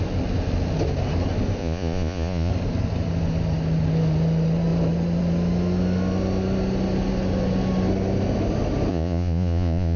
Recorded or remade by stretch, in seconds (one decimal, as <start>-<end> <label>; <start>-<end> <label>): 0.0-1.6 recorded; 1.6-2.5 remade; 2.5-8.9 recorded; 8.9-10.0 remade